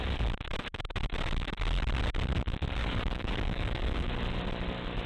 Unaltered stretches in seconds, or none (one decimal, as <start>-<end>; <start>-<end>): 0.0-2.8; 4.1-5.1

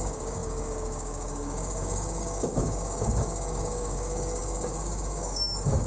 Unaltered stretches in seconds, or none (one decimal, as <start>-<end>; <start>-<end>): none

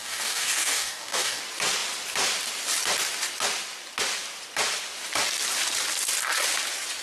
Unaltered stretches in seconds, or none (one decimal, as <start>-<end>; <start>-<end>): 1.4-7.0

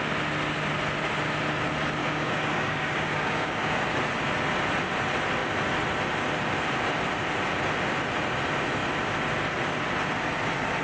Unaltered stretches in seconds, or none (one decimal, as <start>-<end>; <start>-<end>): 0.0-2.0; 3.8-10.8